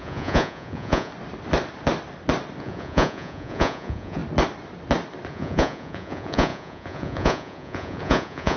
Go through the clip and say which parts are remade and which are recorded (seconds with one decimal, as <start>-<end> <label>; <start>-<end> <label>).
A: 0.0-1.1 remade; 1.1-2.6 recorded; 2.6-4.2 remade; 4.2-5.3 recorded; 5.3-8.6 remade